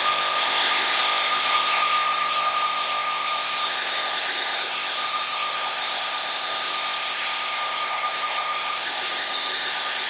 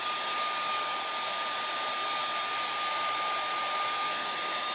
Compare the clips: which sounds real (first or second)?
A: second